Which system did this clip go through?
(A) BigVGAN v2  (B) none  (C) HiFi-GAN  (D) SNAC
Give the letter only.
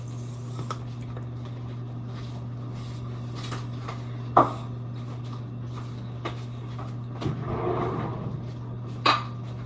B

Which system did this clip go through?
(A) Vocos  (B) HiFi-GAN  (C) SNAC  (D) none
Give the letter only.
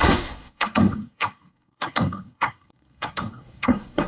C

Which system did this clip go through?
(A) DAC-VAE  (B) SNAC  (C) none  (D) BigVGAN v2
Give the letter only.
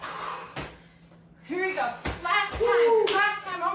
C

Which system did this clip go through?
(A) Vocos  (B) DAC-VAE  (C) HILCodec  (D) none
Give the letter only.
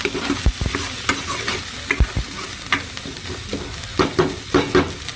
D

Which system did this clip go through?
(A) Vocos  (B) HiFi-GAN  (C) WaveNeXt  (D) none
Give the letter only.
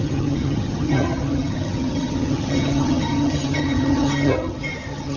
B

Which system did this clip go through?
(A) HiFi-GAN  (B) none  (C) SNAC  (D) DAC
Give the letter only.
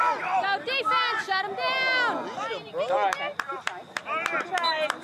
B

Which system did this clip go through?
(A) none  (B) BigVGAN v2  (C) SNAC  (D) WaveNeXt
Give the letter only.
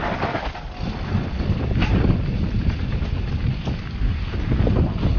A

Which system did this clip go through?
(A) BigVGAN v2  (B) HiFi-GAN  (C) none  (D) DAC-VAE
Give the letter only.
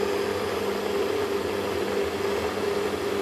C